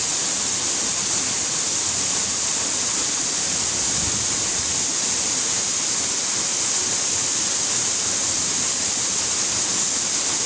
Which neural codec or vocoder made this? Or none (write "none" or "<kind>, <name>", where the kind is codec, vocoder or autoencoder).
none